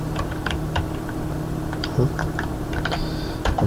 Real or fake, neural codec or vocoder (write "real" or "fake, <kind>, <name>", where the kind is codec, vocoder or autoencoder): fake, vocoder, BigVGAN v2